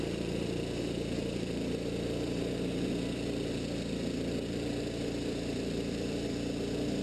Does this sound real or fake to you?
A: fake